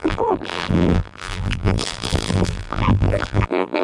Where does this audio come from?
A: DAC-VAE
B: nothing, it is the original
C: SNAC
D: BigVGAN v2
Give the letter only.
D